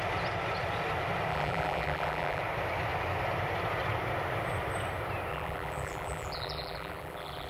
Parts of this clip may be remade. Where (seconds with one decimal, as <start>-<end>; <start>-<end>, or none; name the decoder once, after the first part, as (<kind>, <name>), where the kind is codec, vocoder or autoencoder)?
1.3-2.4 (vocoder, BigVGAN v2); 5.3-7.5